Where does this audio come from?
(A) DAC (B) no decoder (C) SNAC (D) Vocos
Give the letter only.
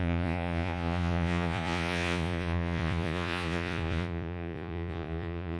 D